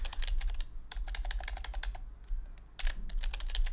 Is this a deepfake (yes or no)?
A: no